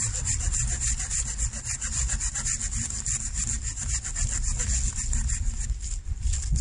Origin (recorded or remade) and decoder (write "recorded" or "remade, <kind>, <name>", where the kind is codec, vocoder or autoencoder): recorded